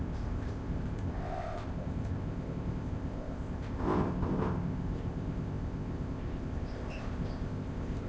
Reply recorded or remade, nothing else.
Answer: remade